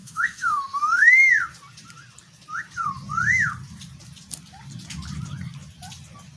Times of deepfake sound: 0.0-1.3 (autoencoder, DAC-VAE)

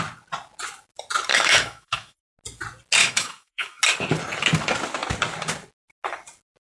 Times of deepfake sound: 1.3-2.2 (autoencoder, DAC-VAE); 3.0-3.8

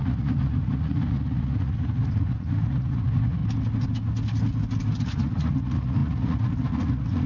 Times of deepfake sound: 0.0-3.4 (vocoder, Vocos); 5.0-7.3

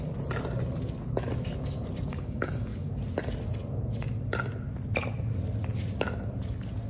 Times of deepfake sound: 2.1-2.9 (codec, DAC)

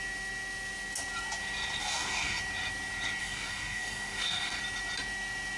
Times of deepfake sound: 1.8-2.4 (codec, DAC); 3.2-4.6

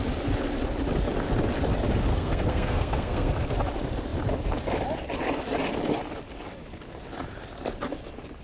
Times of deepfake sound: 2.1-3.3 (codec, SNAC)

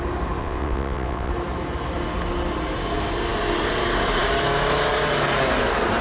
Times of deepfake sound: 0.4-1.3 (vocoder, WaveNeXt)

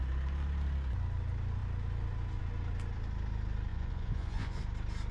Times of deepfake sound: 3.7-4.6 (vocoder, Vocos)